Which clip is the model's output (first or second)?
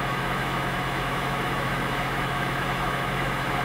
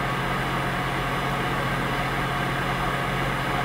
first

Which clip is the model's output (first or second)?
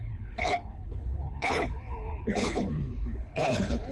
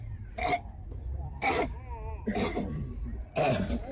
first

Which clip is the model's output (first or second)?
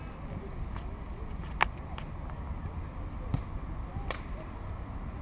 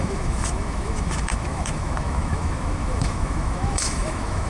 second